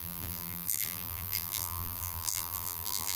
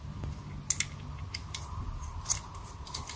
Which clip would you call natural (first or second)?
second